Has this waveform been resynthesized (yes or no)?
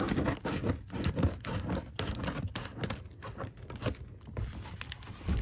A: no